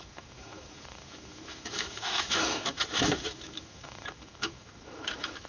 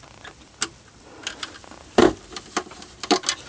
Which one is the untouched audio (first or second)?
second